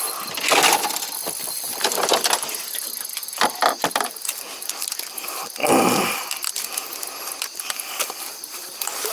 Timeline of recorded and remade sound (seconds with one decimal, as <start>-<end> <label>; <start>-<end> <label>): 0.0-5.4 remade; 5.4-9.1 recorded

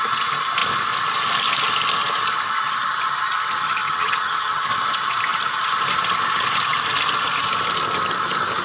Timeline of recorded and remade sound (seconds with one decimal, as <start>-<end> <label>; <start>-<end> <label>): 0.0-3.8 recorded; 3.8-4.7 remade; 4.7-8.6 recorded